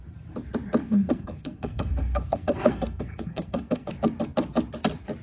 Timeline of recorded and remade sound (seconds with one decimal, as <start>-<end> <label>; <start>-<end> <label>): 0.0-0.8 recorded; 0.8-3.9 remade; 3.9-5.2 recorded